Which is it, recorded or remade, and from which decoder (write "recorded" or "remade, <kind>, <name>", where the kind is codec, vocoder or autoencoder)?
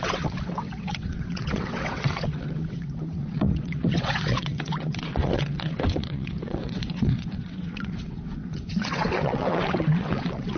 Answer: remade, vocoder, WaveNeXt